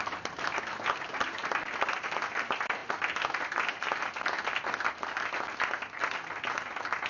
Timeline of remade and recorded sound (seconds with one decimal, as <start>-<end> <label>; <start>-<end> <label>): 0.0-7.1 recorded